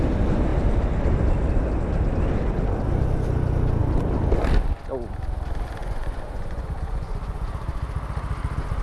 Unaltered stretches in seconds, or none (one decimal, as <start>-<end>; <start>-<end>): 0.0-5.8; 7.5-8.8